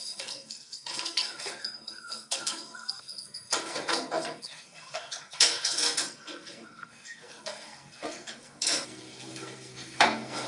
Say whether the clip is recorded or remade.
remade